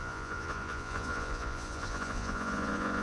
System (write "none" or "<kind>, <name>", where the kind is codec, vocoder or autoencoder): vocoder, Vocos